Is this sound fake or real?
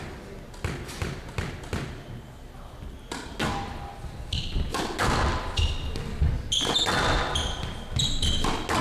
real